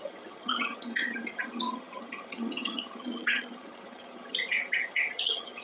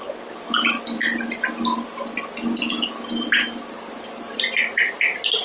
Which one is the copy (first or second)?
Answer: first